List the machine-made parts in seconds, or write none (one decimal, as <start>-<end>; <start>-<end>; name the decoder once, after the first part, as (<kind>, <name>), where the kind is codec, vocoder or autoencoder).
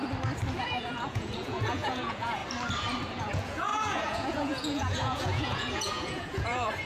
0.5-2.4 (vocoder, Vocos); 3.2-6.9